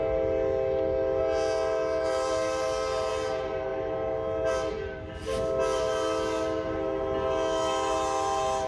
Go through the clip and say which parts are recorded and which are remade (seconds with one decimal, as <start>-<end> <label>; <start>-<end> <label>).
0.0-8.7 recorded